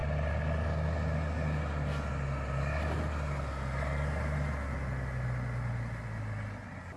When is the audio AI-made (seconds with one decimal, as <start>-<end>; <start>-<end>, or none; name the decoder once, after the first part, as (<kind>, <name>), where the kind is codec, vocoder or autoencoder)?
none

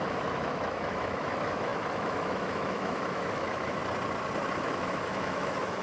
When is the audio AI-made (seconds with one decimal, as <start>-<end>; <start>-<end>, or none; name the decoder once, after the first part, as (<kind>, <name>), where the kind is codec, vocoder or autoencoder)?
0.0-3.8 (autoencoder, DAC-VAE); 4.6-5.8

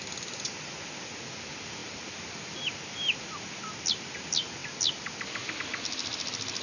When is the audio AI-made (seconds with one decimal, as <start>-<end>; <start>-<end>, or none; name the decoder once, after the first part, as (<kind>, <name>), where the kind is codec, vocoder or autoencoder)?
none

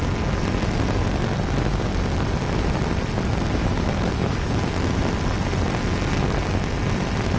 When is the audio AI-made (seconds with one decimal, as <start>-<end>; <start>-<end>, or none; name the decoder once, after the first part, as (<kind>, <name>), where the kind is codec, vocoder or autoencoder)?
3.6-5.0 (autoencoder, DAC-VAE)

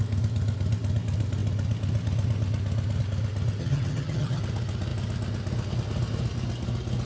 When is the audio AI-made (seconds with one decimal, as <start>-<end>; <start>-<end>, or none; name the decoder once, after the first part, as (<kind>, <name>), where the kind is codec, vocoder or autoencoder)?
3.6-4.4 (vocoder, HiFi-GAN)

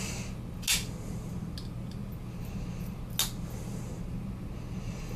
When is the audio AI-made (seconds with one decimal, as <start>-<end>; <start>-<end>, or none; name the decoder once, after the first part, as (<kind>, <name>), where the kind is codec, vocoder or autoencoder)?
none

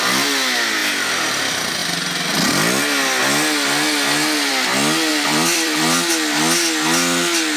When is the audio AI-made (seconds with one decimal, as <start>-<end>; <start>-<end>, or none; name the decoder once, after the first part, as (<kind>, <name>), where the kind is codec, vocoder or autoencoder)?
0.8-1.4 (vocoder, BigVGAN v2); 5.1-6.1

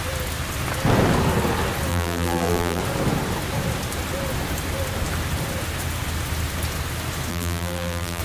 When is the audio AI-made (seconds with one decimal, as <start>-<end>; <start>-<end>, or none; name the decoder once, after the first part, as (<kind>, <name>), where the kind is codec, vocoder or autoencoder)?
1.9-2.8 (vocoder, BigVGAN v2); 7.3-8.2